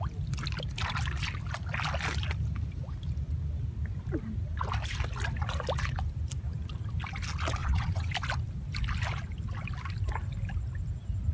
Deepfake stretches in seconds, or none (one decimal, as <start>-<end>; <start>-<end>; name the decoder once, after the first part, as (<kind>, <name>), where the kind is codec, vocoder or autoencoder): 7.6-8.1 (vocoder, Vocos)